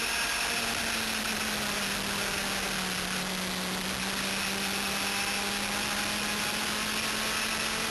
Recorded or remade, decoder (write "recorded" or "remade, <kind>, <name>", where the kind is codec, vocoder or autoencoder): recorded